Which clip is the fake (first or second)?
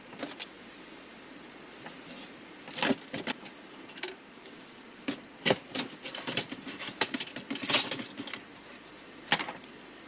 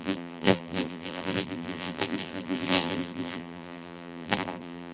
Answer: second